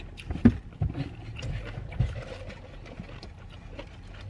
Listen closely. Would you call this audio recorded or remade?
recorded